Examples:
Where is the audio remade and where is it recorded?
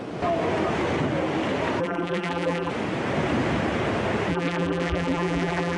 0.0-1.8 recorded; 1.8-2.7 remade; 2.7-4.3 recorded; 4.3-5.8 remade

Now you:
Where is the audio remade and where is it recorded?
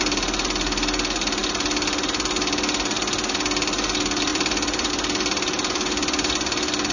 0.0-4.3 recorded; 4.3-4.9 remade; 4.9-6.9 recorded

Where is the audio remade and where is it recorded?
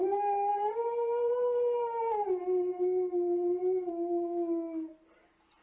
0.0-0.5 recorded; 0.5-3.9 remade; 3.9-5.6 recorded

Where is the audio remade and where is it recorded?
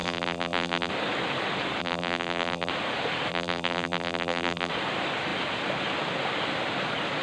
0.0-0.9 remade; 0.9-1.8 recorded; 1.8-2.7 remade; 2.7-3.3 recorded; 3.3-4.7 remade; 4.7-7.2 recorded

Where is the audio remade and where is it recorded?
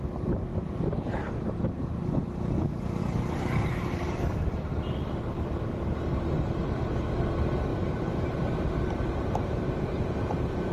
0.0-3.0 recorded; 3.0-4.4 remade; 4.4-6.6 recorded; 6.6-7.2 remade; 7.2-7.7 recorded; 7.7-10.7 remade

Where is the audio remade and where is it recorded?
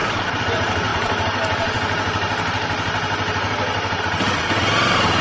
0.0-0.5 remade; 0.5-0.9 recorded; 0.9-4.0 remade; 4.0-5.2 recorded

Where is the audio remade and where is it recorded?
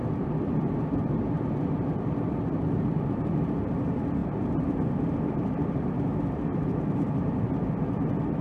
0.0-8.4 recorded